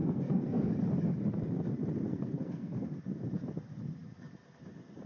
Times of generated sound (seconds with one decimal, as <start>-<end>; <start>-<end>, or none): 0.0-0.7; 2.1-2.9